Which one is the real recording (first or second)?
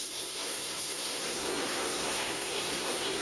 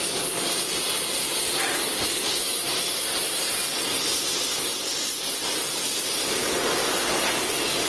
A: second